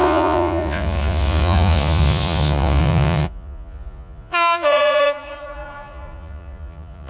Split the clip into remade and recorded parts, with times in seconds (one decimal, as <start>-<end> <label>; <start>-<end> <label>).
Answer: 0.0-7.1 remade